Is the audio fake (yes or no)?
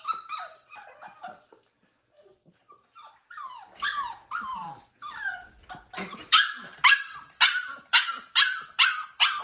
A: yes